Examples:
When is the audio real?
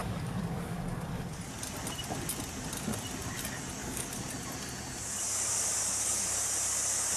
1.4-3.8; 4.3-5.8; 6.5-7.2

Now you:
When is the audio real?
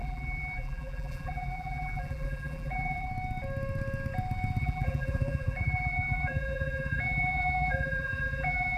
3.1-4.6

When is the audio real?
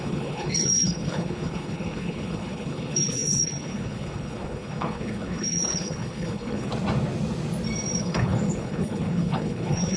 6.7-8.0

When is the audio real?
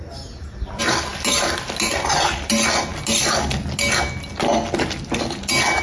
0.0-5.8